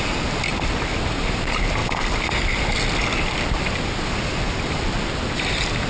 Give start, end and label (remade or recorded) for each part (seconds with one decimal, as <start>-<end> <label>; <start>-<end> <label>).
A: 0.0-0.5 recorded; 0.5-1.1 remade; 1.1-5.9 recorded